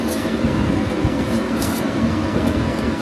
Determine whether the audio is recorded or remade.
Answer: remade